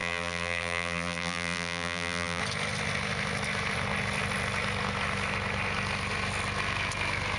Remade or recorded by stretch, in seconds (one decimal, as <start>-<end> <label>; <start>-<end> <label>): 0.0-2.4 remade; 2.4-7.4 recorded